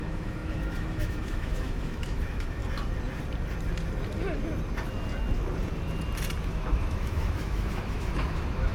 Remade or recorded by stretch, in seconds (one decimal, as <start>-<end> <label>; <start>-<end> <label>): 0.0-2.6 remade; 2.6-6.4 recorded; 6.4-8.7 remade